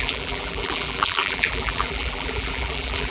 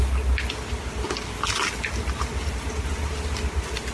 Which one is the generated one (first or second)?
first